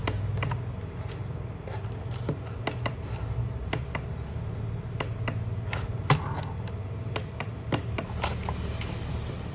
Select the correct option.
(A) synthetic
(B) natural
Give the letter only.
B